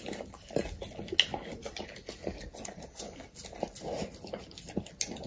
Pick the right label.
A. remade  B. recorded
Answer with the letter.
B